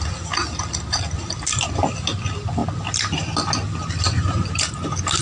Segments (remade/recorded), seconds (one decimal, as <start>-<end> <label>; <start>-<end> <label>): 0.0-5.2 recorded